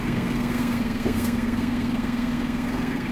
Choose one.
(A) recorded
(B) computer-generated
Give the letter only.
B